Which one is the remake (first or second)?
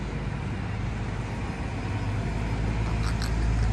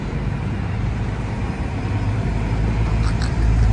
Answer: second